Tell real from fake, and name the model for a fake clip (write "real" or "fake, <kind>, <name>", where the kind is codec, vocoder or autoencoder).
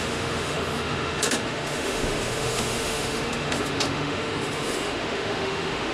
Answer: fake, autoencoder, DAC-VAE